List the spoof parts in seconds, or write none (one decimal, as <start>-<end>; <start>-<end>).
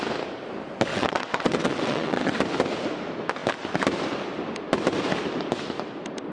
0.9-2.4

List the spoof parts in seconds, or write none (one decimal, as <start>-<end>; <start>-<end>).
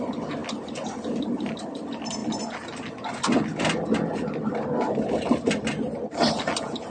none